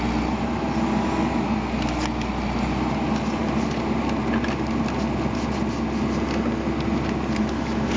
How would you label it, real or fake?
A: real